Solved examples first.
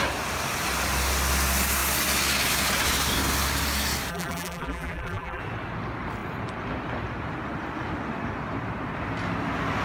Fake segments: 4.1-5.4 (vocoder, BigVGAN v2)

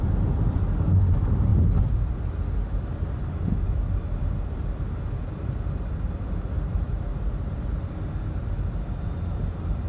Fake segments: none

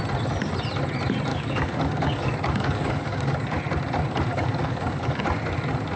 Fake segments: 1.3-3.6 (codec, DAC); 4.3-5.2

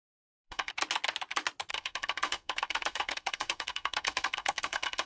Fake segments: 0.0-0.7 (codec, SNAC); 1.7-5.1

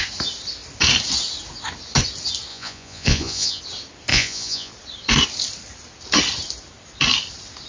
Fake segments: 2.5-3.6 (vocoder, Vocos); 4.1-4.7

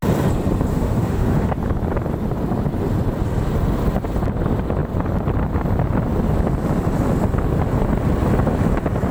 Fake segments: 0.7-1.5 (autoencoder, DAC-VAE)